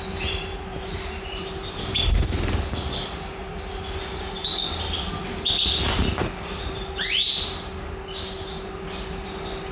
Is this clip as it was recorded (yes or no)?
yes